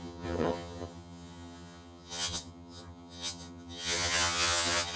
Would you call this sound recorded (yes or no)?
no